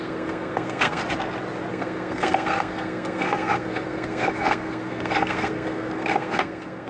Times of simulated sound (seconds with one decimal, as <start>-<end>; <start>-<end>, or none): 0.0-1.0; 1.7-6.9